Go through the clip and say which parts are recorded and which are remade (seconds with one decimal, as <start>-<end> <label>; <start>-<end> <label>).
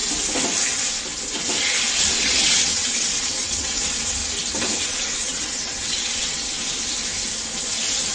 0.0-2.1 recorded; 2.1-4.2 remade; 4.2-4.8 recorded; 4.8-6.6 remade; 6.6-8.1 recorded